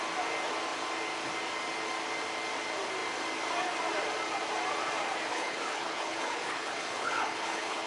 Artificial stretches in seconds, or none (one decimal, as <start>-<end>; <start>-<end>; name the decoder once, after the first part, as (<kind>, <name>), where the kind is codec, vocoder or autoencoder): 5.3-7.9 (codec, HILCodec)